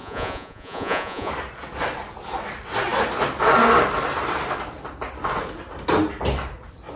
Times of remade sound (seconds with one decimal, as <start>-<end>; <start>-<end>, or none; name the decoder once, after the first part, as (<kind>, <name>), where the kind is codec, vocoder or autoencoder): 0.0-1.3 (vocoder, Vocos)